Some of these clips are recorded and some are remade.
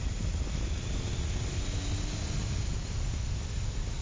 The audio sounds recorded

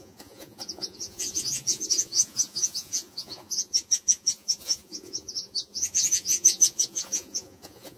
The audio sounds remade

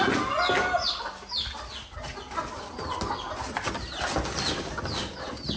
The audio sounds recorded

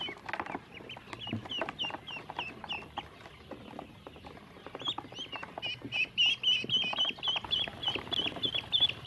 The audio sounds recorded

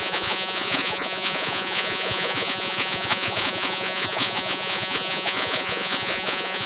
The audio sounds remade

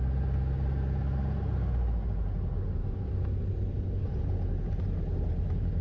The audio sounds recorded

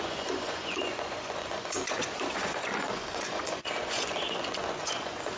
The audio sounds remade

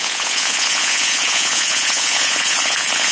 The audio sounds remade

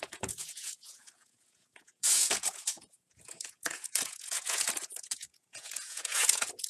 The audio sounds remade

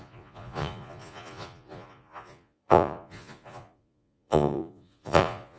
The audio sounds remade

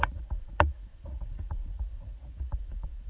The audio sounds remade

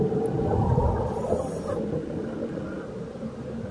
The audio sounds recorded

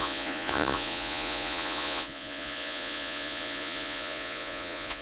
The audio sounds remade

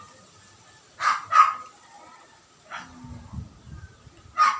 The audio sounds recorded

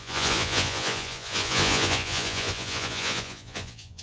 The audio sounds remade